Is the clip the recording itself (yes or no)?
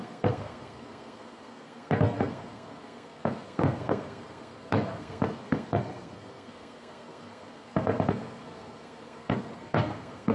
no